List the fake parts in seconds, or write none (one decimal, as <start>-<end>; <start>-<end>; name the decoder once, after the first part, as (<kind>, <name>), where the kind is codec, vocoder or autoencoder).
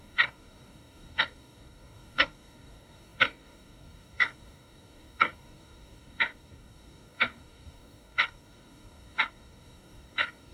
0.0-10.5 (codec, DAC)